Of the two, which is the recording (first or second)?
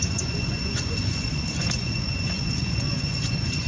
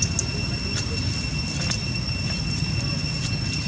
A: second